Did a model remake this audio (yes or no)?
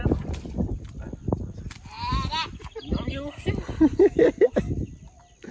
no